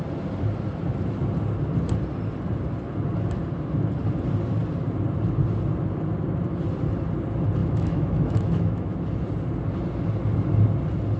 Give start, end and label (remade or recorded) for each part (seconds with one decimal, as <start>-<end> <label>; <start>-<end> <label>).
0.0-7.6 recorded; 7.6-9.0 remade; 9.0-11.2 recorded